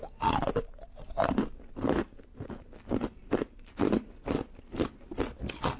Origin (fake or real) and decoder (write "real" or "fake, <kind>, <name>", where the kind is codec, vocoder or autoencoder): real